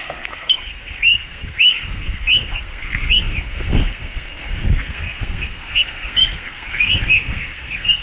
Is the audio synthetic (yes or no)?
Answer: yes